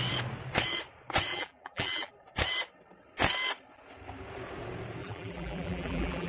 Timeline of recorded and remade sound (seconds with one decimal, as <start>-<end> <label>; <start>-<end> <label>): 0.0-1.3 recorded; 1.3-2.1 remade; 2.1-5.0 recorded; 5.0-6.3 remade